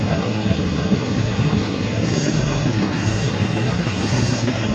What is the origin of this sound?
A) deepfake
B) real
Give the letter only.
A